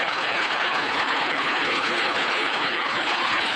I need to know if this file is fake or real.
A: fake